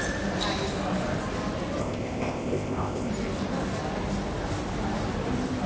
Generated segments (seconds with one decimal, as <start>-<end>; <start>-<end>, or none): 1.8-3.1